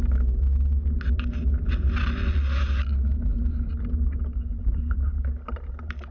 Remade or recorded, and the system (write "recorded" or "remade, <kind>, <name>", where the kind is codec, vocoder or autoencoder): recorded